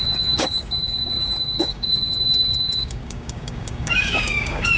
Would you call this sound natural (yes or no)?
no